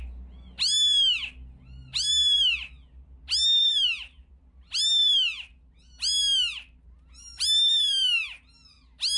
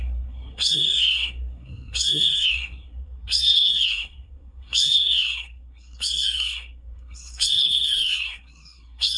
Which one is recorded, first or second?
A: first